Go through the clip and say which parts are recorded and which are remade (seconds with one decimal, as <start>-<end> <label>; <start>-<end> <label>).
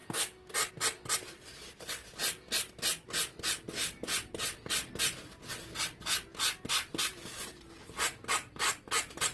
0.0-9.3 recorded